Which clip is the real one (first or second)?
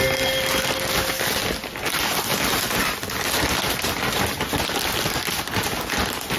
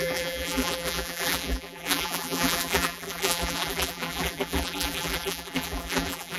first